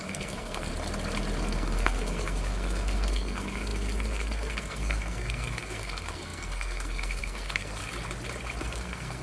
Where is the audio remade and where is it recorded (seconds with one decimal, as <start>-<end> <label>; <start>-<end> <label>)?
0.0-0.7 remade; 0.7-1.4 recorded; 1.4-7.8 remade; 7.8-8.6 recorded; 8.6-9.2 remade